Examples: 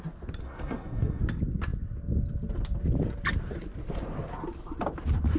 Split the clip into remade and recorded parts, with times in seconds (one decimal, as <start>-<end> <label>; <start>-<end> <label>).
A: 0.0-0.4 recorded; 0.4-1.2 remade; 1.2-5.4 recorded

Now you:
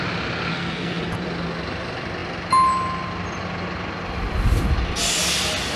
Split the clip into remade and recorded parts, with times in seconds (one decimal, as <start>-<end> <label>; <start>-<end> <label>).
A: 0.0-0.5 recorded; 0.5-1.0 remade; 1.0-5.8 recorded

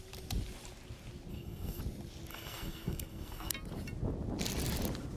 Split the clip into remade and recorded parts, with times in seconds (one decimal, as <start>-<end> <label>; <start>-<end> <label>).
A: 0.0-1.3 recorded; 1.3-1.8 remade; 1.8-2.3 recorded; 2.3-3.5 remade; 3.5-5.2 recorded

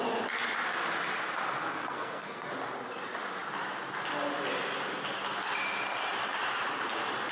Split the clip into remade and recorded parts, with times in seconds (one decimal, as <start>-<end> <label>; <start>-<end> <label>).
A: 0.0-1.6 recorded; 1.6-2.5 remade; 2.5-7.3 recorded